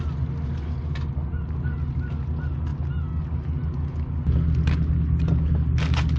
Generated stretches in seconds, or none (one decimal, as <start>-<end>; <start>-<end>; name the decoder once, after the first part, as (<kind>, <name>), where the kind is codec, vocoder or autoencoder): none